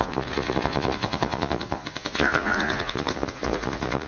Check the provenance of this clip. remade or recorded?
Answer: remade